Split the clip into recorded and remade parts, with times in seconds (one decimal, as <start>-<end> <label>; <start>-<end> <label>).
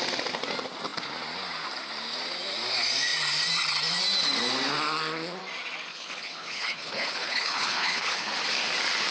0.0-5.9 recorded; 5.9-8.3 remade; 8.3-9.1 recorded